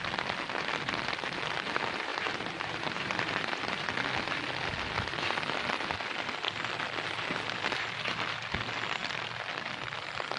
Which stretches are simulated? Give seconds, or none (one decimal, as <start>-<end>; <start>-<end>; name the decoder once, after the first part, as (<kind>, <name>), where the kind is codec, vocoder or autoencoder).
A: 2.1-3.9 (vocoder, BigVGAN v2)